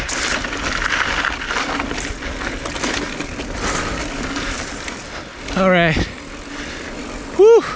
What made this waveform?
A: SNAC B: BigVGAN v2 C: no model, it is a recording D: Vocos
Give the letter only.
C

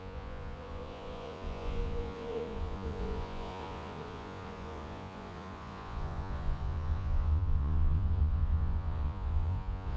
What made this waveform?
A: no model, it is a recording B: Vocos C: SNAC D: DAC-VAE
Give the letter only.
B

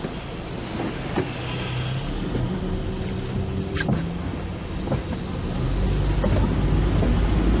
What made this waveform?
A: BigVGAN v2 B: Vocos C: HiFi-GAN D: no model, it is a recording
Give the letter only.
D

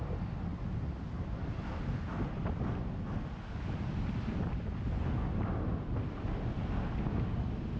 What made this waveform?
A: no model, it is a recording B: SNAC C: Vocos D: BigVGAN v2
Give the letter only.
A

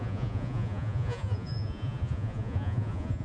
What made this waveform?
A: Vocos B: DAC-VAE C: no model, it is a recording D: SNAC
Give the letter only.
A